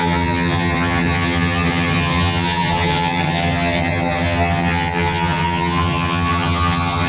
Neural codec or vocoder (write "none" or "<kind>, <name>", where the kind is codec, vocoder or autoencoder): vocoder, HiFi-GAN